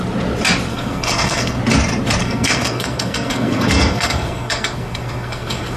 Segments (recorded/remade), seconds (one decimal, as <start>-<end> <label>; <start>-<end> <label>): 0.0-0.7 recorded; 0.7-1.6 remade; 1.6-2.2 recorded; 2.2-5.8 remade